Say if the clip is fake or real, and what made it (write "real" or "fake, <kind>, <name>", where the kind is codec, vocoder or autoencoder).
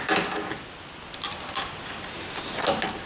real